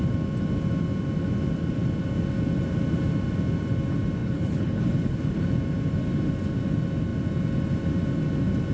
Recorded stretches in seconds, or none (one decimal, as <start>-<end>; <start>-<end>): 0.0-4.2; 5.5-8.7